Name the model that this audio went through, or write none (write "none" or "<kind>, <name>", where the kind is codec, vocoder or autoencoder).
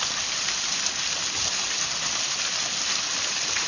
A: none